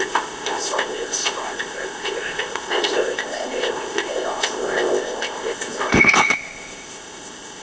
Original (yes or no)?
no